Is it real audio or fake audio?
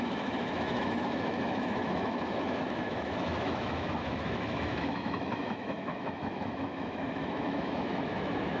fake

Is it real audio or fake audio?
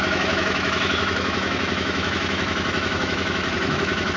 fake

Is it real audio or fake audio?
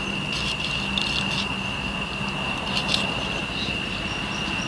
real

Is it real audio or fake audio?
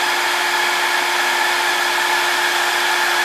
real